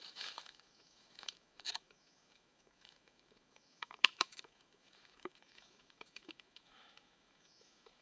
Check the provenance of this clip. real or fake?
fake